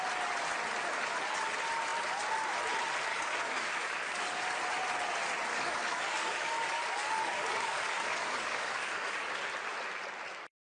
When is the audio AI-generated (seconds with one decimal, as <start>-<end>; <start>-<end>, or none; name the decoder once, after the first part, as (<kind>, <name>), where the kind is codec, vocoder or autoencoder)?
3.1-4.4 (codec, DAC); 5.5-9.3